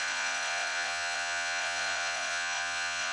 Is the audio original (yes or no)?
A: no